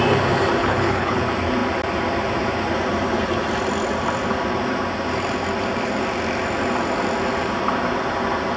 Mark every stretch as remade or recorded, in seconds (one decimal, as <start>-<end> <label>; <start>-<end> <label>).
0.0-0.6 recorded; 0.6-1.2 remade; 1.2-8.6 recorded